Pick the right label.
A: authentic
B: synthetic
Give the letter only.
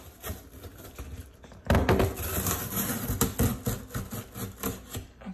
A